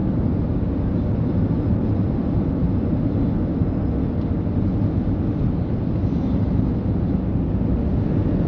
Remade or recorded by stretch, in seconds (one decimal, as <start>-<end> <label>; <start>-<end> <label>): 0.0-8.5 recorded